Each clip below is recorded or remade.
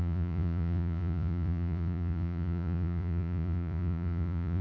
remade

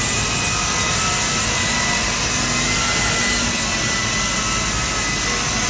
recorded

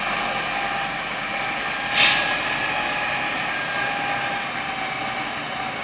recorded